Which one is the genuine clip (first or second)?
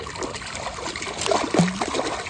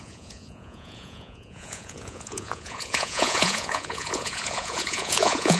first